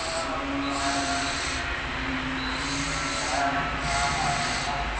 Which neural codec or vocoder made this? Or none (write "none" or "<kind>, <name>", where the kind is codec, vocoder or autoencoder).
none